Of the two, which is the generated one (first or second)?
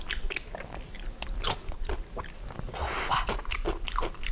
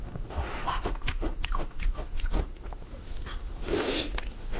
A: second